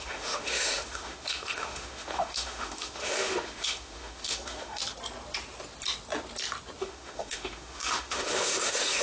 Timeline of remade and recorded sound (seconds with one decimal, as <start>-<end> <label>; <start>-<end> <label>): 0.0-4.8 remade; 4.8-6.8 recorded; 6.8-9.0 remade